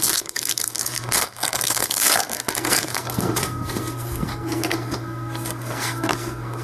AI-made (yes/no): yes